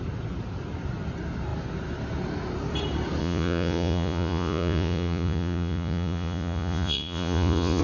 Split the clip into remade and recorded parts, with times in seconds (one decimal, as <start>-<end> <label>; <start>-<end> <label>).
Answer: 0.0-3.2 recorded; 3.2-7.8 remade